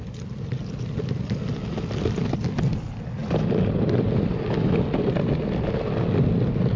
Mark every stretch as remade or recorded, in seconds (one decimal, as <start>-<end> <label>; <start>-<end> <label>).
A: 0.0-6.8 recorded